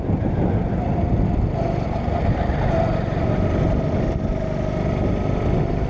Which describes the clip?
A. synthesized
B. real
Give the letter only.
B